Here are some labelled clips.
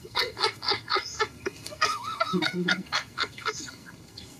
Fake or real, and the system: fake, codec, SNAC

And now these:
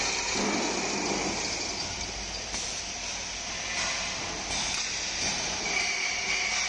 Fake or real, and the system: real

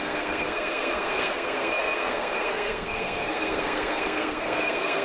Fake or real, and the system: fake, codec, SNAC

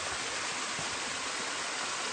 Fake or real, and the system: real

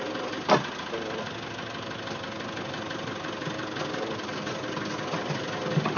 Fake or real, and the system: real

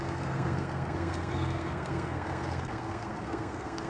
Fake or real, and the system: fake, codec, SNAC